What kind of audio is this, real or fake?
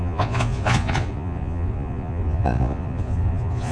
fake